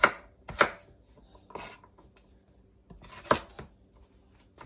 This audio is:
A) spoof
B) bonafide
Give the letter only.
B